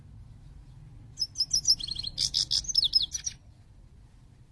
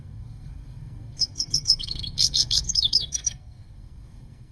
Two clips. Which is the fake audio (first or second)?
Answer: second